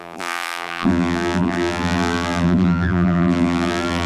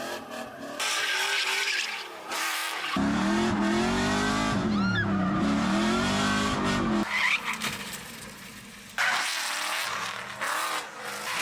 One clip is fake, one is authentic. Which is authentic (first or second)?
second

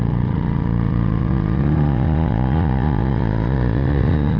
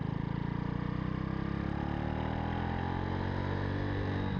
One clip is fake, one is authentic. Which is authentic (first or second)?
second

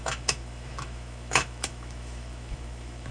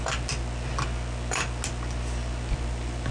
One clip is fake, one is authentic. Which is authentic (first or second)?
second